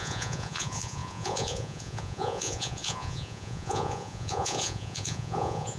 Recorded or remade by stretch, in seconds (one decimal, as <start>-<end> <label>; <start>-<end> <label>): 0.0-5.8 remade